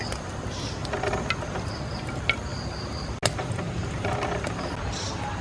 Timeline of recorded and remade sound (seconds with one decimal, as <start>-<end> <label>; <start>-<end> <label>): 0.0-5.4 recorded